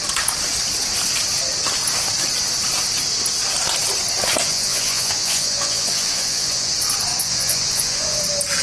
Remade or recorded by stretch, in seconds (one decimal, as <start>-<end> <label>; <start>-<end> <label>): 0.0-4.5 recorded; 4.5-6.7 remade; 6.7-7.2 recorded; 7.2-8.2 remade; 8.2-8.6 recorded